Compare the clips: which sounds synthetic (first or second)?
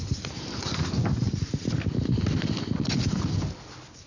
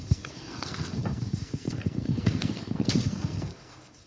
second